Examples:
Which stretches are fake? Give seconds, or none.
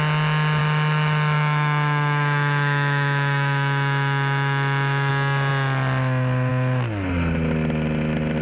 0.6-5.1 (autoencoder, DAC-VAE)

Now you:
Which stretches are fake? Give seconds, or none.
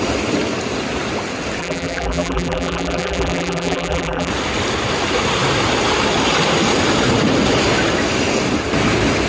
1.6-4.3 (vocoder, BigVGAN v2)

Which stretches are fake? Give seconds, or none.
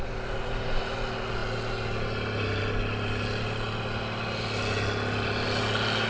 none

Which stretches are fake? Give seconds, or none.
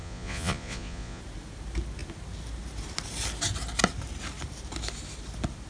0.0-1.2 (vocoder, Vocos)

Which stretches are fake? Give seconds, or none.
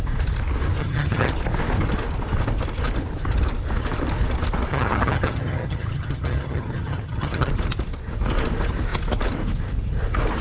0.8-1.3 (vocoder, HiFi-GAN); 4.7-7.5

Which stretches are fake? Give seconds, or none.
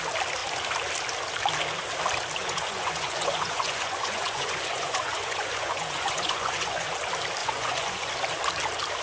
2.4-6.9 (vocoder, Vocos); 7.4-8.1